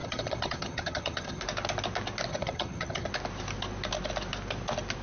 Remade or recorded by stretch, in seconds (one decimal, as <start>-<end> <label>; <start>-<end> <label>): 0.0-1.4 remade; 1.4-2.3 recorded; 2.3-3.1 remade; 3.1-5.0 recorded